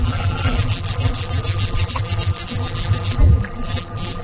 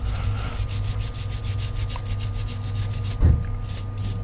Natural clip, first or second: second